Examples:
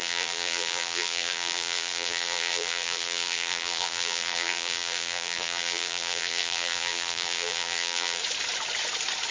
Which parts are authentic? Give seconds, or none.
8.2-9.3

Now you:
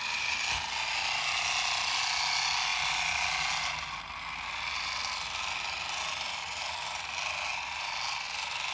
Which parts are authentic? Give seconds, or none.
0.0-2.7; 3.3-8.7